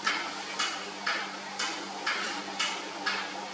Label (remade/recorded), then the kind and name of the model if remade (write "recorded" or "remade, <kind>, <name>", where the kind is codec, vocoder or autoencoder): recorded